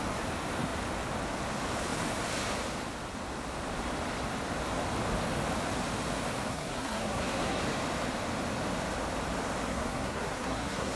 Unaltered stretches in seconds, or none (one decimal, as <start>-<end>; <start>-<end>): 0.0-6.5; 7.6-9.7